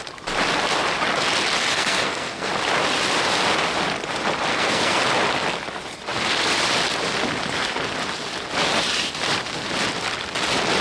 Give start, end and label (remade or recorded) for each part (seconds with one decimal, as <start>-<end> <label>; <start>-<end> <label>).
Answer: 0.0-1.7 recorded; 1.7-2.5 remade; 2.5-4.5 recorded; 4.5-5.0 remade; 5.0-10.8 recorded